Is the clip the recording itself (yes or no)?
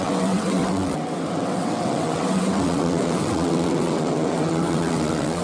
no